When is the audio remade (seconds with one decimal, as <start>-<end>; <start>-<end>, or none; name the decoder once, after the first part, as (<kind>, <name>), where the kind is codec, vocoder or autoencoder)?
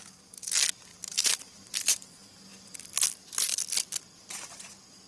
0.9-2.8 (vocoder, BigVGAN v2)